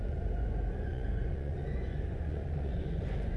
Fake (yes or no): yes